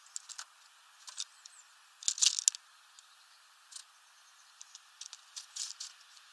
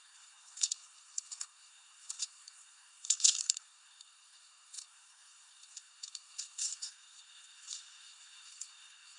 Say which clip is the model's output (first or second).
second